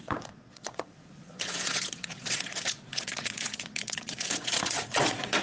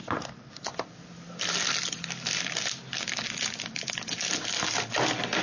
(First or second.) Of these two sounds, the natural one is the second